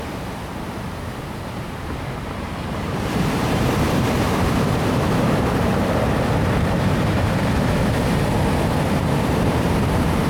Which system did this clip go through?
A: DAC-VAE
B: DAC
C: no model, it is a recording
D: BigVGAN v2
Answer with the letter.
D